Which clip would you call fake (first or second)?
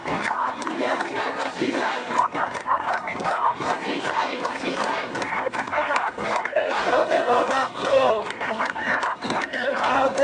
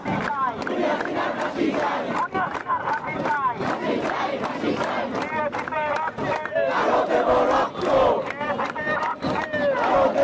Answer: first